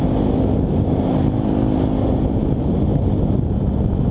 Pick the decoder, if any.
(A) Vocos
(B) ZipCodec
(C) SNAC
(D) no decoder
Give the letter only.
D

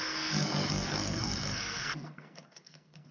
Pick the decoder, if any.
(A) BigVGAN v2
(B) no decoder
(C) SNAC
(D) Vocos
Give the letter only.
C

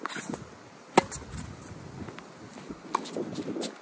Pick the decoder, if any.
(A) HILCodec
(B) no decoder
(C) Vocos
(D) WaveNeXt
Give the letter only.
B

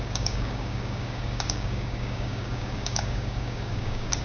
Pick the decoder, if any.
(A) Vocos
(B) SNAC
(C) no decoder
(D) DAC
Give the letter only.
D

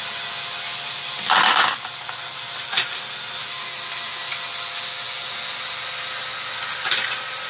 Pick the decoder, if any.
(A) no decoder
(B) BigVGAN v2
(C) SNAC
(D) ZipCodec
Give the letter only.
A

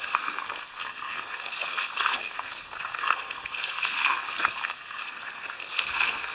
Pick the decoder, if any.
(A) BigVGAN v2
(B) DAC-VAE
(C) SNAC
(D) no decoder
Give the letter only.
C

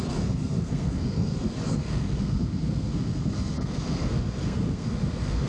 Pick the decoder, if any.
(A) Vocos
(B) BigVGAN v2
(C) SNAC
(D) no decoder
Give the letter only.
C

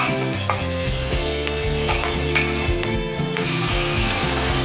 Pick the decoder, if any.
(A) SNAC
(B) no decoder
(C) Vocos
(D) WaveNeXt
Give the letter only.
A